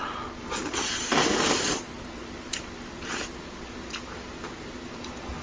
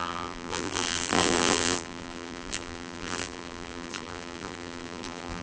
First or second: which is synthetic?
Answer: second